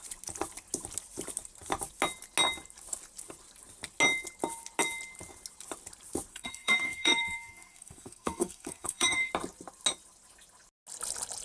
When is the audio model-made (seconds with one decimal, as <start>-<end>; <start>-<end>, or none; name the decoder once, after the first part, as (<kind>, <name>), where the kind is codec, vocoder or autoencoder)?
6.3-9.3 (codec, SNAC)